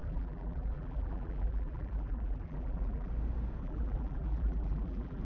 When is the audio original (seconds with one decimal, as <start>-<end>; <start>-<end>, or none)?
3.1-3.6